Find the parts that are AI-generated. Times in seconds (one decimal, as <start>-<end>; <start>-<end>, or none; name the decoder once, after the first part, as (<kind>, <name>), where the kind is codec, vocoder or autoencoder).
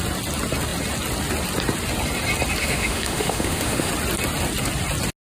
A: 2.6-3.9 (autoencoder, DAC-VAE)